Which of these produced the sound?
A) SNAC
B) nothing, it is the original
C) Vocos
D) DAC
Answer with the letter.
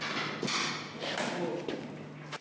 B